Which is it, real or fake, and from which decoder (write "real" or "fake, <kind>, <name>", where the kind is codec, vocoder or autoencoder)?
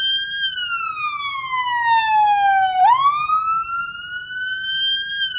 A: real